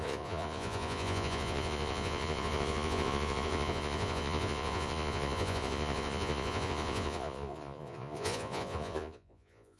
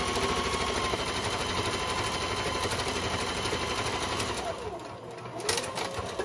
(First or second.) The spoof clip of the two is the first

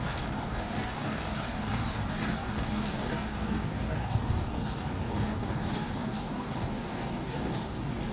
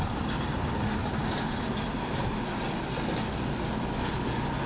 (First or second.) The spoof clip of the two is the first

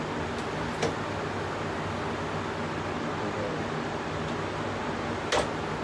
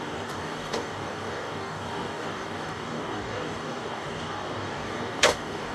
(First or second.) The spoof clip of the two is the second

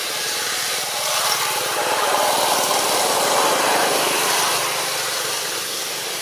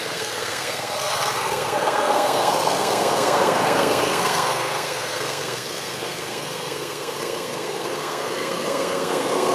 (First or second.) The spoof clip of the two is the second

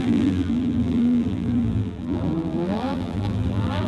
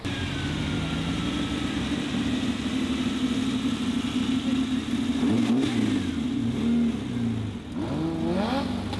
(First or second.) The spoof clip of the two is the first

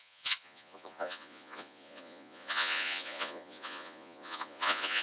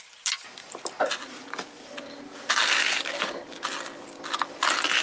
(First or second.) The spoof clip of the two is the first